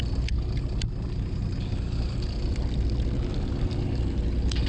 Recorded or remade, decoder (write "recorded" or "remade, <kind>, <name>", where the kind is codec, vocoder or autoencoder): recorded